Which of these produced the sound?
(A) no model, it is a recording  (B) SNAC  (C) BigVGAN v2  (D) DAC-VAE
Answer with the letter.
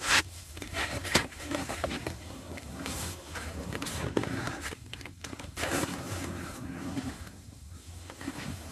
B